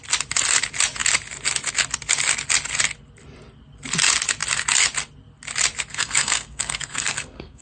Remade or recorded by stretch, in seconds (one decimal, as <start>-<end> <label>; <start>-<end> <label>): 0.0-5.9 recorded; 5.9-7.6 remade